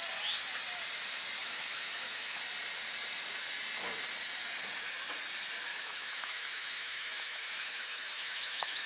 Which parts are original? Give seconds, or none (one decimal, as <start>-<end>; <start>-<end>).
0.0-1.4; 2.4-5.7